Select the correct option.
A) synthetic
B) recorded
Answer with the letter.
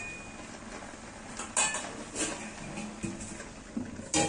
B